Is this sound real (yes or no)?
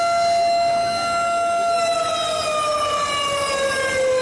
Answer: yes